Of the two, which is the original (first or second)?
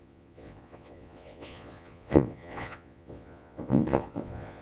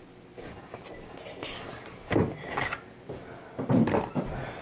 second